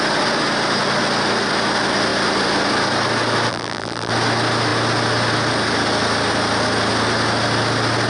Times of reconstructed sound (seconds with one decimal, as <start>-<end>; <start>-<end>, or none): 3.5-4.1